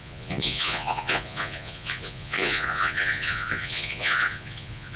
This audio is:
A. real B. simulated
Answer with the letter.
B